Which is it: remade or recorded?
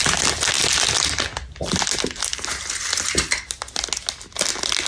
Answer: recorded